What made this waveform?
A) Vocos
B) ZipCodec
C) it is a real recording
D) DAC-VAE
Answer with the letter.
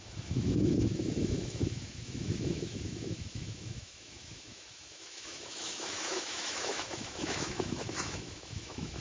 D